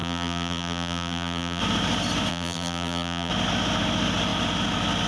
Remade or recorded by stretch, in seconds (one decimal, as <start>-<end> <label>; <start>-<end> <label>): 0.0-1.6 remade; 1.6-2.3 recorded; 2.3-3.3 remade; 3.3-5.1 recorded